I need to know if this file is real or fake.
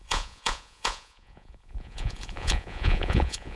fake